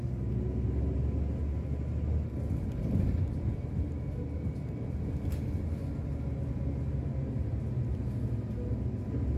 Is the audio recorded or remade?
recorded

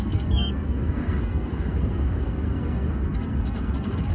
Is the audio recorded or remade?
remade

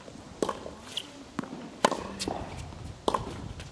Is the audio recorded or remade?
recorded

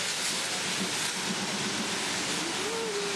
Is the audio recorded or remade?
recorded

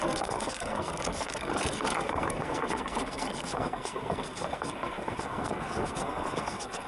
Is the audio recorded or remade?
remade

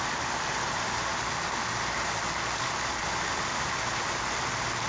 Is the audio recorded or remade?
recorded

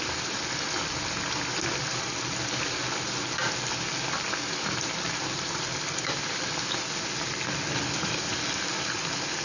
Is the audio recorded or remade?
recorded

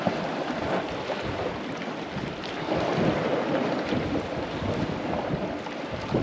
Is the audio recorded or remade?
recorded